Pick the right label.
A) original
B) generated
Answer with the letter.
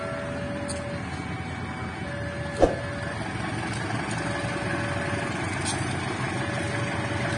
A